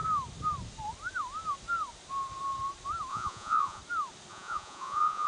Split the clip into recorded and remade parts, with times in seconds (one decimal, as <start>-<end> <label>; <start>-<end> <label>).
0.0-3.1 recorded; 3.1-3.8 remade; 3.8-4.3 recorded; 4.3-5.3 remade